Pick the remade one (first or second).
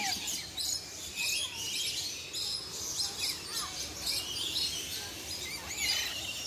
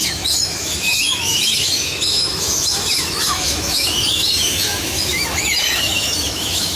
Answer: second